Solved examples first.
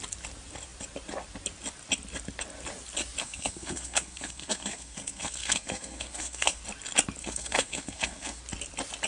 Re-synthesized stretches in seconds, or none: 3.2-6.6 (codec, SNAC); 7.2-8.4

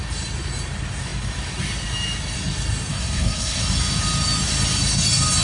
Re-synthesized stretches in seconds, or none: 2.9-3.6 (codec, SNAC)

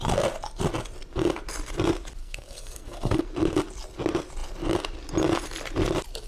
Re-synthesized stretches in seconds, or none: 2.2-3.3 (codec, SNAC)

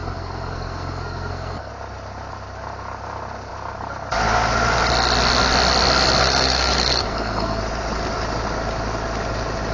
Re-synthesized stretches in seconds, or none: 0.0-1.7 (codec, SNAC); 6.2-7.6

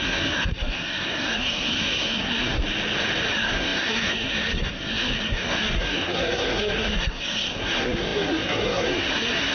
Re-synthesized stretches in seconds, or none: 0.0-2.6 (codec, SNAC); 3.3-9.5

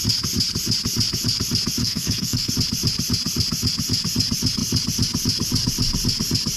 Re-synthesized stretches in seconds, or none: 1.8-2.5 (codec, SNAC)

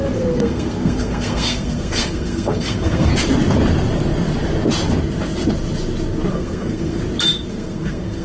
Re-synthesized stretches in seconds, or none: 0.0-3.1 (codec, SNAC); 6.3-7.0; 7.5-8.2